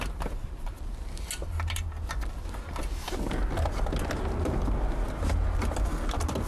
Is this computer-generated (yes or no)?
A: no